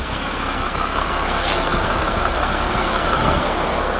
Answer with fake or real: fake